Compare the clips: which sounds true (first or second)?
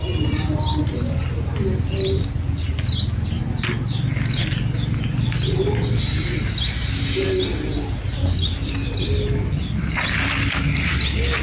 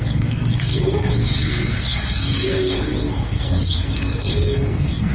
first